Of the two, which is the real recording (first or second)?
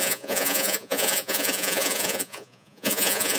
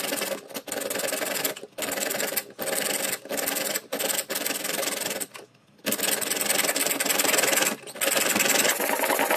second